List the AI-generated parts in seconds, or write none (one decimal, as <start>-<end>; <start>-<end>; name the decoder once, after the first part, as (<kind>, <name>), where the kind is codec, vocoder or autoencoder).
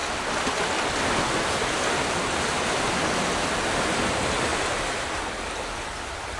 none